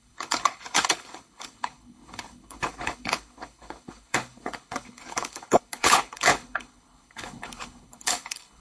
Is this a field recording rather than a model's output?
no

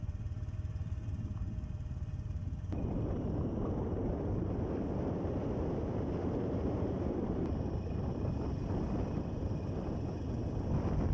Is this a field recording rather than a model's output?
yes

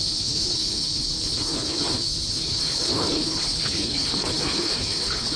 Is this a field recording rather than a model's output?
no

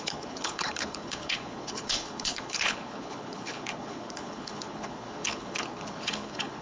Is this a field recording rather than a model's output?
no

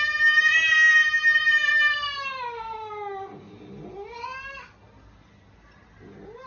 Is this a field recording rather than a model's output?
yes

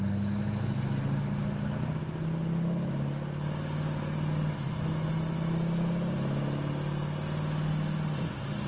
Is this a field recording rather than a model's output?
yes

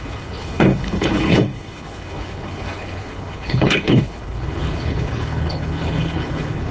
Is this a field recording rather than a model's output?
no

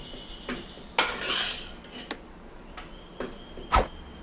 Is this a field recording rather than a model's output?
yes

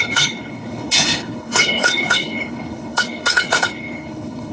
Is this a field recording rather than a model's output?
no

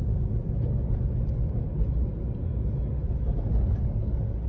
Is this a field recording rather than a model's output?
yes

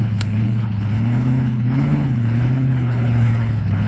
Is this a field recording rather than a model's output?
no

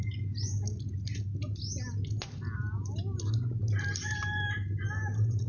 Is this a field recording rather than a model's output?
yes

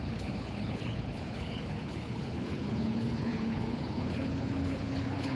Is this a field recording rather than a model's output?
no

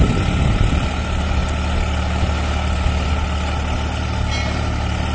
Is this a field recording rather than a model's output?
yes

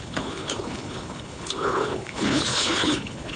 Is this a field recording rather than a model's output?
no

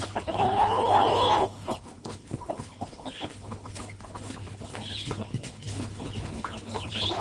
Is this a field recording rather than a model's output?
no